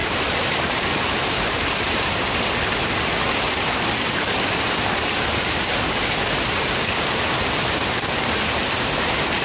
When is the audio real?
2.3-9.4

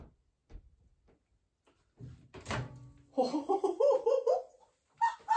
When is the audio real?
0.0-5.4

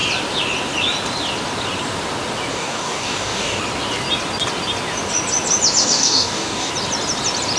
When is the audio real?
0.0-2.5; 3.6-5.8; 6.7-7.6

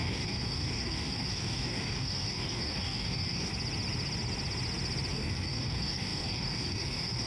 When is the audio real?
3.5-5.1